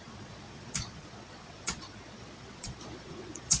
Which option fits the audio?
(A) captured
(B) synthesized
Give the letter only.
B